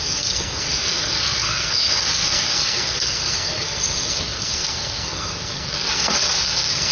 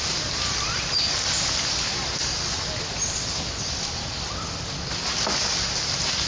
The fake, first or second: first